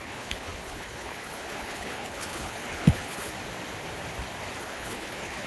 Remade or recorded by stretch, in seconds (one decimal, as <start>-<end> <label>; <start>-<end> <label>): 0.0-3.3 remade; 3.3-4.6 recorded; 4.6-5.5 remade